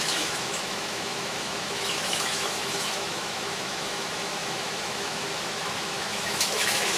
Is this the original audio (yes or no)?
no